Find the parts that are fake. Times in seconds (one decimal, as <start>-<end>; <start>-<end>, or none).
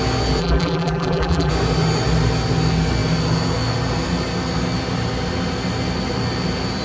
0.4-1.5